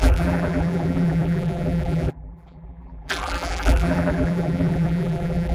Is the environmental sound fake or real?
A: fake